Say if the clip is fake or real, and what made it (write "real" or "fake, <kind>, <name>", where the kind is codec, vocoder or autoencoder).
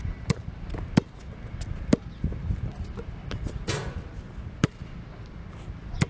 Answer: real